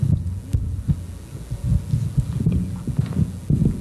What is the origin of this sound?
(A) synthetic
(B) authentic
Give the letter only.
B